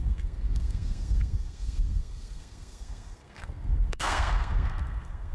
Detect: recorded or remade remade